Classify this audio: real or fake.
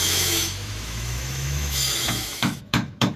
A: fake